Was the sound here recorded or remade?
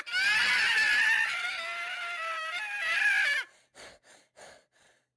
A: recorded